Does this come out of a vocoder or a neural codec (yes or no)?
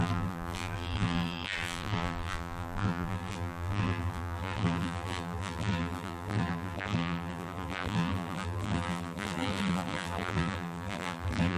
yes